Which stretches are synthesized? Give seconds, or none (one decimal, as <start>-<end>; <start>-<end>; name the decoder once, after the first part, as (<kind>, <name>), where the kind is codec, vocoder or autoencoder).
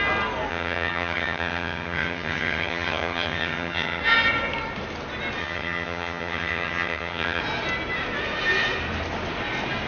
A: 0.5-4.0 (vocoder, HiFi-GAN); 5.4-7.4